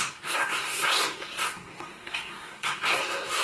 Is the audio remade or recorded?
remade